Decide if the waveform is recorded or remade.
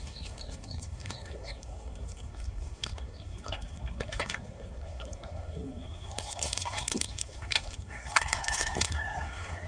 remade